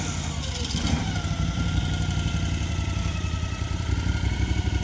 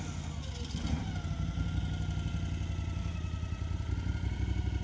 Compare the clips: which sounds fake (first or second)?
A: first